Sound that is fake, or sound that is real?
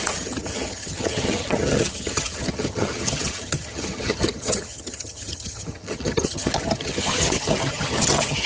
fake